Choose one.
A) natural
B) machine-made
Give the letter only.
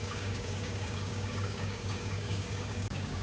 B